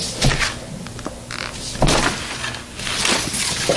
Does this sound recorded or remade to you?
recorded